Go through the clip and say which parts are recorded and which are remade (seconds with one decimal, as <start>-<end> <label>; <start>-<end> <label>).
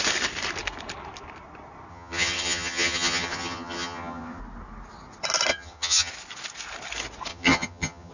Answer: 0.0-1.9 recorded; 1.9-4.4 remade; 4.4-5.5 recorded; 5.5-6.1 remade; 6.1-7.3 recorded; 7.3-8.1 remade